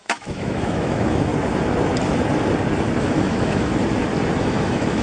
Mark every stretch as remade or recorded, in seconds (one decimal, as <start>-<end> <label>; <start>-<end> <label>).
0.0-1.3 remade; 1.3-3.0 recorded; 3.0-3.7 remade; 3.7-4.4 recorded; 4.4-5.0 remade